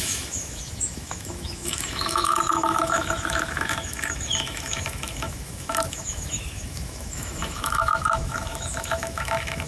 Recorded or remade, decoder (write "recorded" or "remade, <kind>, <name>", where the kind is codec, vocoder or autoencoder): remade, autoencoder, DAC-VAE